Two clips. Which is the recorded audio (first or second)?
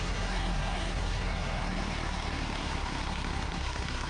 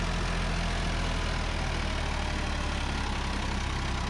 second